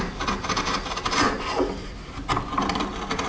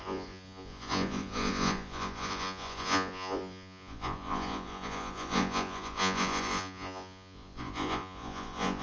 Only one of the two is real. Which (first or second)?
first